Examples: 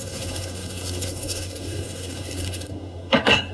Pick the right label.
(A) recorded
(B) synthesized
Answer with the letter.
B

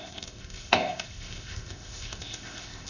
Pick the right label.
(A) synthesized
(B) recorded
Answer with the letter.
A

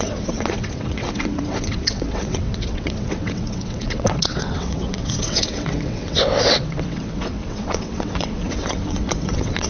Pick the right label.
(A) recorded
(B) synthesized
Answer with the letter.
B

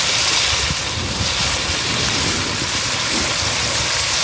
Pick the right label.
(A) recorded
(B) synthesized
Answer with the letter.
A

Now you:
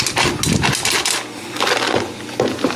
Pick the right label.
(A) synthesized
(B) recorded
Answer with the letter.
B